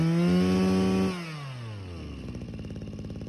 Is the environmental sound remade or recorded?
recorded